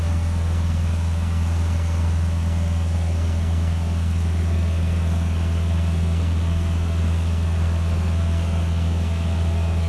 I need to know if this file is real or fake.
fake